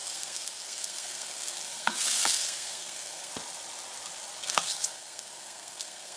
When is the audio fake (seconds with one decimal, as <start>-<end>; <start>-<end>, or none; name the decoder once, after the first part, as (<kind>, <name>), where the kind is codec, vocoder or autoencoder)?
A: 0.0-3.3 (codec, SNAC); 4.4-6.2

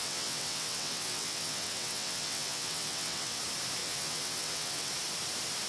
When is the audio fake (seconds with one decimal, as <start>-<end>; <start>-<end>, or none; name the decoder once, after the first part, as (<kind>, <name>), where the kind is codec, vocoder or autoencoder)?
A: 0.0-3.4 (vocoder, WaveNeXt); 3.8-4.9

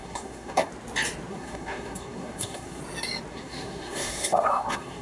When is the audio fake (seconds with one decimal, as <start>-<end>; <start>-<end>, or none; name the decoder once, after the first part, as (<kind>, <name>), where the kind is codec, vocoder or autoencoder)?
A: 0.0-0.7 (codec, SNAC); 1.3-2.8; 3.3-5.0

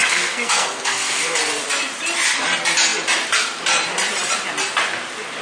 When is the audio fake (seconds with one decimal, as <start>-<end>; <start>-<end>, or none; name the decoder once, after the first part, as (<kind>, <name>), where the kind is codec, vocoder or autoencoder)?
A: 0.0-1.4 (codec, SNAC)